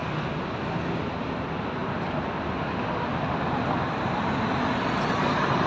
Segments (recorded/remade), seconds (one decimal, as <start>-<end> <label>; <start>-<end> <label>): 0.0-5.7 recorded